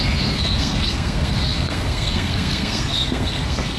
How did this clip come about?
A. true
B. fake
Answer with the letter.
B